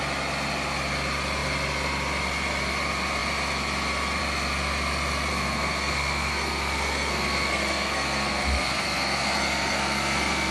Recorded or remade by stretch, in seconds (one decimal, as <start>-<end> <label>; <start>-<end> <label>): 0.0-5.3 recorded; 5.3-10.5 remade